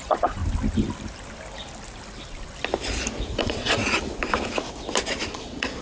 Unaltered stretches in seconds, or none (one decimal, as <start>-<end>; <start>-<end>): 0.4-3.4; 3.8-5.3